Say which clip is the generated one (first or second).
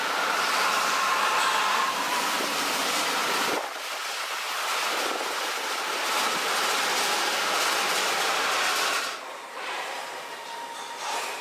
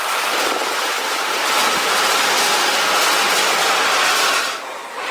first